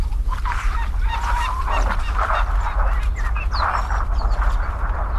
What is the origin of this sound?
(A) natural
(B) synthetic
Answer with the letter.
A